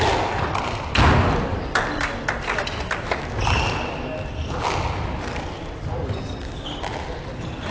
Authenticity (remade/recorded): recorded